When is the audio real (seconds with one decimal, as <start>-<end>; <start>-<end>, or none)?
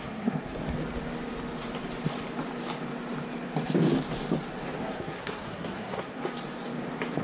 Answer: 0.6-4.8; 6.2-7.2